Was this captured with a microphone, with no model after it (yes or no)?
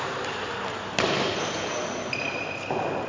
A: yes